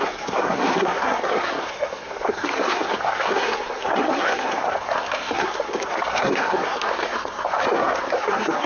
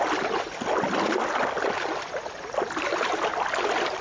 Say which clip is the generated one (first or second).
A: first